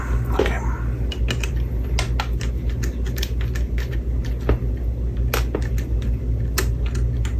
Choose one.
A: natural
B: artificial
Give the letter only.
A